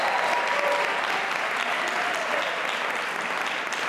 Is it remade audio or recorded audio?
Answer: recorded